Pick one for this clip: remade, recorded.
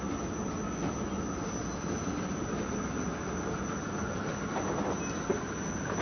recorded